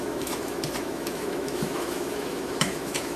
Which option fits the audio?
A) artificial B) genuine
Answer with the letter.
A